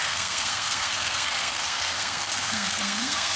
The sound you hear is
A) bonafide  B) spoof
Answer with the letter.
B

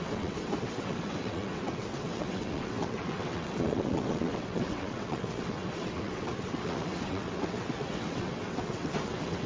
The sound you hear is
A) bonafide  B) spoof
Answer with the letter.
B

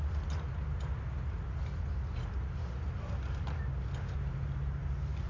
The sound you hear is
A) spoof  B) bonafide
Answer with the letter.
B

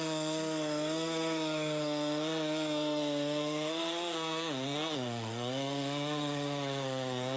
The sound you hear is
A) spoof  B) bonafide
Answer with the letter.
A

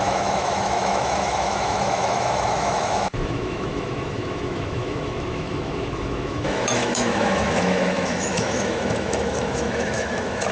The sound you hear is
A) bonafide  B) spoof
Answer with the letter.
B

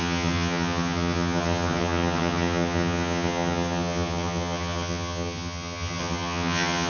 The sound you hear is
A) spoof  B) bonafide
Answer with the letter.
A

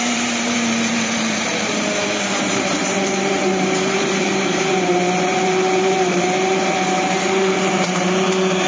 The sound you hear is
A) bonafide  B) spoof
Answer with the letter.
B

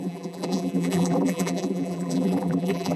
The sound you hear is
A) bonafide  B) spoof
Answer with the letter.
B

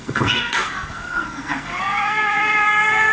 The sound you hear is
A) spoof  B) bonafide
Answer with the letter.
A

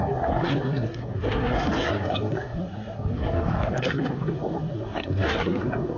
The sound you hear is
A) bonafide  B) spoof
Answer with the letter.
B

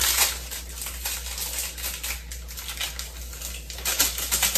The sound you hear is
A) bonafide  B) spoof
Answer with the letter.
A